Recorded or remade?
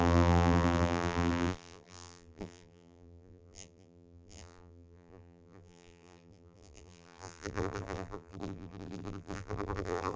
remade